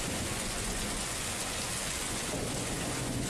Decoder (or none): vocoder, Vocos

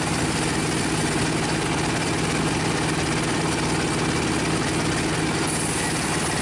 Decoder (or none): none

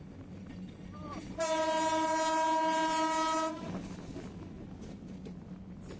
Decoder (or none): none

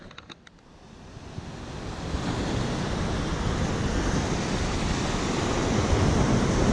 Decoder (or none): none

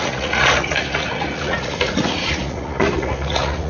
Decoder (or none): vocoder, Vocos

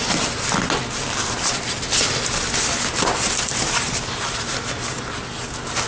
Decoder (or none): none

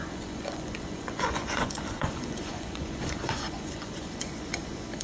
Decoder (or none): vocoder, Vocos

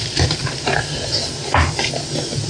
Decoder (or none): none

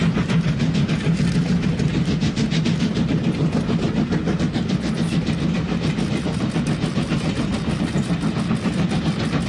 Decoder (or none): none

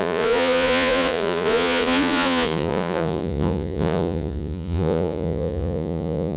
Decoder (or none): vocoder, Vocos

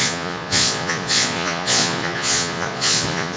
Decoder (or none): vocoder, Vocos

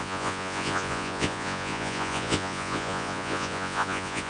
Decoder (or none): vocoder, Vocos